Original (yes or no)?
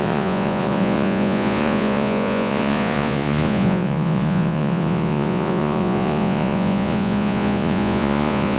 no